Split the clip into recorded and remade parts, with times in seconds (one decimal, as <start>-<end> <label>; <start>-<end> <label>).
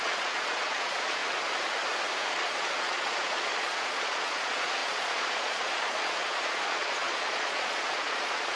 0.0-1.2 remade; 1.2-2.3 recorded; 2.3-8.6 remade